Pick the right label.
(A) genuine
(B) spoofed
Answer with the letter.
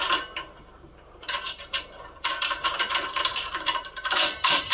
B